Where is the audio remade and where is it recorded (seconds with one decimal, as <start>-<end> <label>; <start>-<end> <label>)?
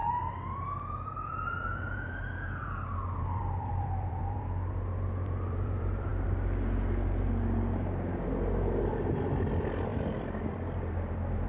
0.0-6.1 remade; 6.1-8.9 recorded; 8.9-11.5 remade